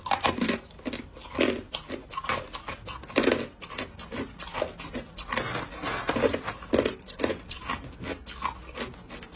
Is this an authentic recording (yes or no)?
yes